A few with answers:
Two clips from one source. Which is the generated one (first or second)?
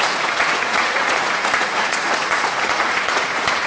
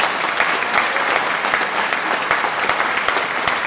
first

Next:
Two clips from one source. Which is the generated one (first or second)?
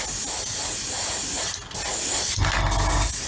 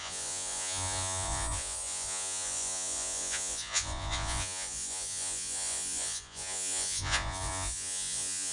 second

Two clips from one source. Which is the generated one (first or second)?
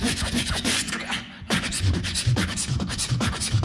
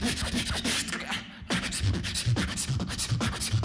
first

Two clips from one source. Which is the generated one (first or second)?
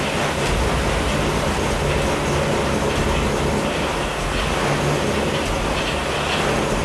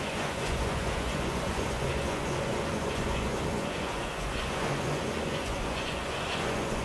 second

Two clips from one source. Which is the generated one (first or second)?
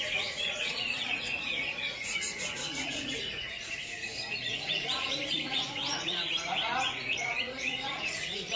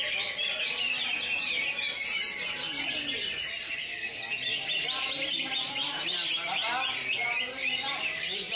first